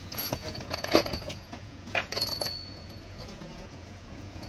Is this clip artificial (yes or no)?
yes